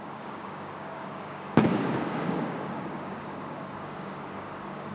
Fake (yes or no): yes